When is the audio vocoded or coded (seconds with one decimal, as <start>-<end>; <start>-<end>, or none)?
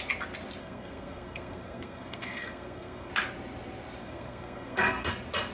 0.6-3.1; 4.0-5.1